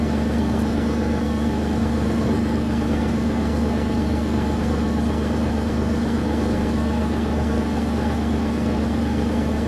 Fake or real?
fake